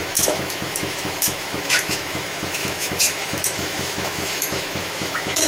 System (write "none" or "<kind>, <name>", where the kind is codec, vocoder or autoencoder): autoencoder, DAC-VAE